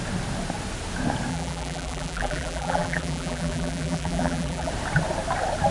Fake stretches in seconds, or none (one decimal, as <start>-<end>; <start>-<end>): 1.3-4.7